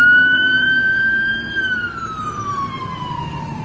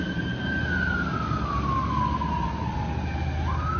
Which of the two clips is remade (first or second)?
first